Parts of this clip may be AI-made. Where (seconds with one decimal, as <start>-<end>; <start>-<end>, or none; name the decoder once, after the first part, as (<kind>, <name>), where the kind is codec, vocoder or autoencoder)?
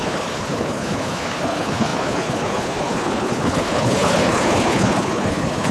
0.0-5.7 (codec, HILCodec)